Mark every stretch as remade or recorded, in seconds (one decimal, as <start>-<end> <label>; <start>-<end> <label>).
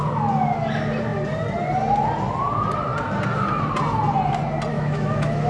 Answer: 0.0-4.7 recorded; 4.7-5.5 remade